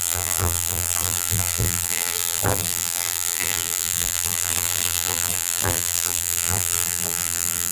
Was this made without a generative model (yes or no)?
no